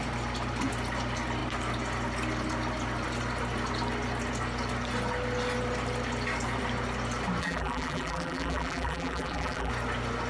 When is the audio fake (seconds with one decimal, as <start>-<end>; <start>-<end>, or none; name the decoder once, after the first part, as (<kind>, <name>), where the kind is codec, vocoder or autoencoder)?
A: 7.4-9.7 (vocoder, BigVGAN v2)